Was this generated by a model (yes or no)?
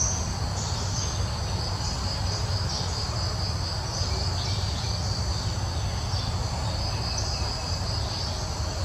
no